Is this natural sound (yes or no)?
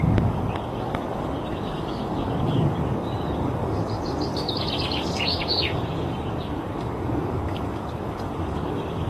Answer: no